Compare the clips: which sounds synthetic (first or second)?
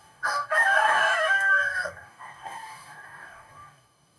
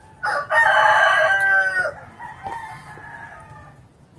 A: first